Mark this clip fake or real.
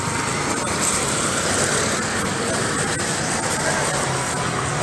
real